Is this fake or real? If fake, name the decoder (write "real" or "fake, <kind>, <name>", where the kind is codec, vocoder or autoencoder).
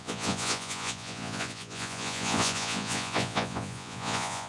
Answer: fake, vocoder, Vocos